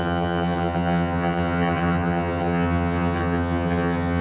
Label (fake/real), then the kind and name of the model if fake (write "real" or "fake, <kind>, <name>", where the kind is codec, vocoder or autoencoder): fake, vocoder, HiFi-GAN